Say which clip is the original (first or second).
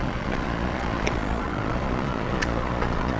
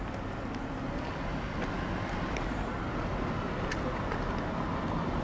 second